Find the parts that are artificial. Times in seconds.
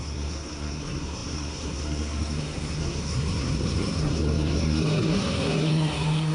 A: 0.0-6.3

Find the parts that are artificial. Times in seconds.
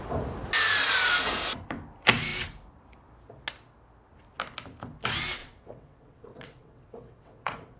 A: 5.4-7.8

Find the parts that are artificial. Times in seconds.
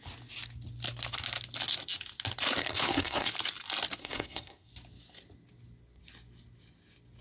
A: 2.6-3.3; 4.0-4.7